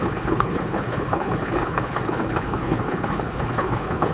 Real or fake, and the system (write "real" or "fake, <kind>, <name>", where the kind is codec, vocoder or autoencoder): fake, codec, HILCodec